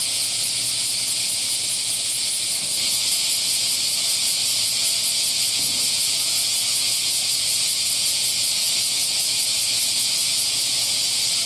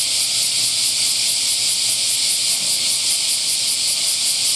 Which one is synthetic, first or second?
first